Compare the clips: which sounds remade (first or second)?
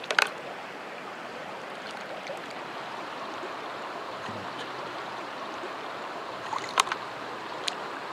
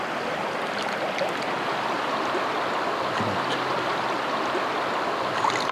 first